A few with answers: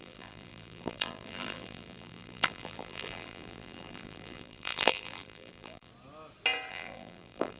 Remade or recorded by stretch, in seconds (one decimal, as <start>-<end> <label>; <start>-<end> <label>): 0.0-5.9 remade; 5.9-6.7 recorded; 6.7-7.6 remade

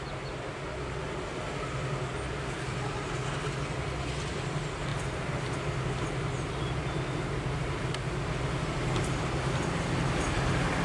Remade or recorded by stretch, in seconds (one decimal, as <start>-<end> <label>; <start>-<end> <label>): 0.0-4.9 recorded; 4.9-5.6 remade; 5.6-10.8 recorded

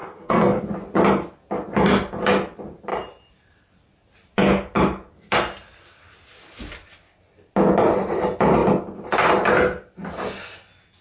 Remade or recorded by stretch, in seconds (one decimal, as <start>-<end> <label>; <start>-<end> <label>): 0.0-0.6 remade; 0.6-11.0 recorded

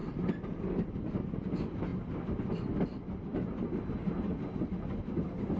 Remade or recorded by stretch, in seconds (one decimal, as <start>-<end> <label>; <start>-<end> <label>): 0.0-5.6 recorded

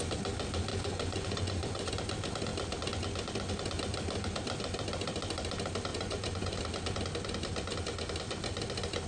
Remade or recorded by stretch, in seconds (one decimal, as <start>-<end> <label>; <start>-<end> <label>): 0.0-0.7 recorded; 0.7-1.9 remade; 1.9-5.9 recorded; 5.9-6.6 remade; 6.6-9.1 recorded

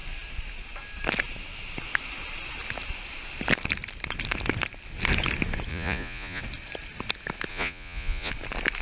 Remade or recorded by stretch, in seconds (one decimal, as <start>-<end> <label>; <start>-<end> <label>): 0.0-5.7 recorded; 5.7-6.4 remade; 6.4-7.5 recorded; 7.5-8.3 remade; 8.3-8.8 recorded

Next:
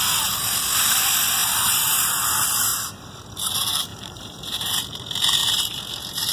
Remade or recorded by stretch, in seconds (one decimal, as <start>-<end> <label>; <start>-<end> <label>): 0.0-1.4 recorded; 1.4-2.0 remade; 2.0-2.7 recorded; 2.7-3.3 remade; 3.3-3.9 recorded; 3.9-4.7 remade; 4.7-5.4 recorded; 5.4-6.3 remade

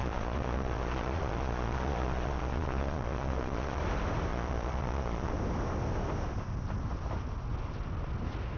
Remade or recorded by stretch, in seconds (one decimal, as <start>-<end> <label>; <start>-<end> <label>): 0.0-3.8 remade; 3.8-4.3 recorded; 4.3-5.3 remade; 5.3-8.6 recorded